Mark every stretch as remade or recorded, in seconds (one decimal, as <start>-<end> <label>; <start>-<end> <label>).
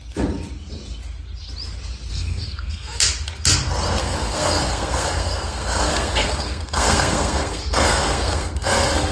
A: 0.0-2.1 recorded; 2.1-3.0 remade; 3.0-4.0 recorded; 4.0-9.1 remade